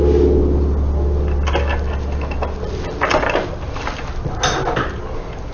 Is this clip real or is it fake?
real